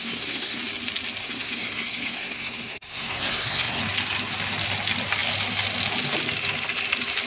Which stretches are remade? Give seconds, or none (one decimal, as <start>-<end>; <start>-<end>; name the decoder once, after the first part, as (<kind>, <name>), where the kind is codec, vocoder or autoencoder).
0.0-0.6 (codec, SNAC); 1.2-3.8